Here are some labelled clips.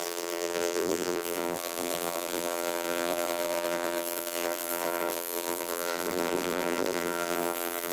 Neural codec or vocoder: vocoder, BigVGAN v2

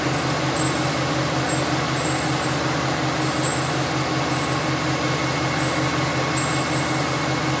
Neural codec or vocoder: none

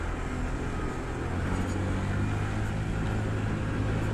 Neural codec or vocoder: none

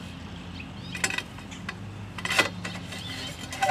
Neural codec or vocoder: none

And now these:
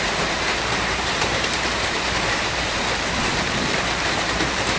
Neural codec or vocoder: vocoder, BigVGAN v2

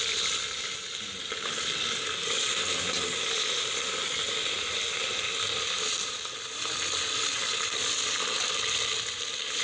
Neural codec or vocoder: none